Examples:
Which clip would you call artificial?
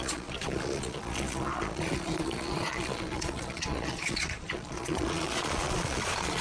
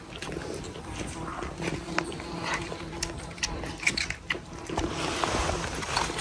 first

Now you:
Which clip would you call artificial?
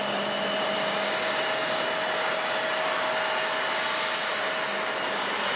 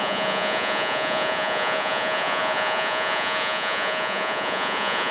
second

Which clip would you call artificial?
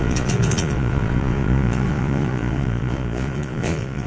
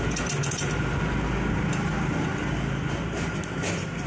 first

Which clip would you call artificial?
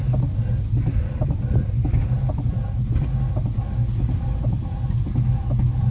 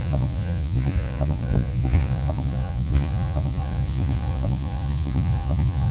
second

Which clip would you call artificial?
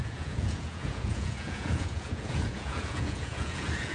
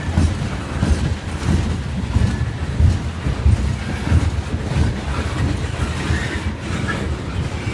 first